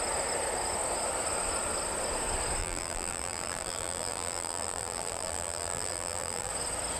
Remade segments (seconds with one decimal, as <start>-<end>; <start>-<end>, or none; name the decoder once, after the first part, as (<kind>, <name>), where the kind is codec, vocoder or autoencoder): 2.6-6.5 (vocoder, BigVGAN v2)